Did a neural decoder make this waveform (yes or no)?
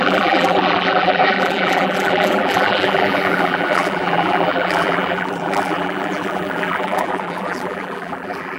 yes